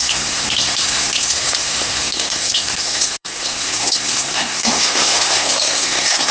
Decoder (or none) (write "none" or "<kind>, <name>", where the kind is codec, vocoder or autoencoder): codec, SNAC